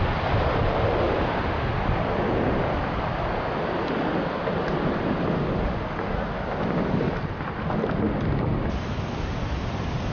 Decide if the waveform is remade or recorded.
recorded